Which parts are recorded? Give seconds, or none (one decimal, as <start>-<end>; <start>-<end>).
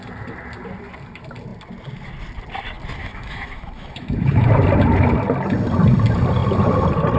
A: 0.0-3.0; 4.5-7.2